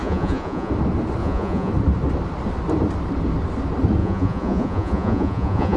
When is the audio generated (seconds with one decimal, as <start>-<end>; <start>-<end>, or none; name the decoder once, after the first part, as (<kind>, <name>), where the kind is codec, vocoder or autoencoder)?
0.0-0.7 (vocoder, Vocos); 1.2-1.7; 4.0-5.8